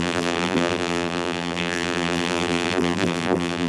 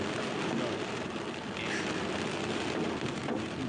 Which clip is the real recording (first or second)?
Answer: second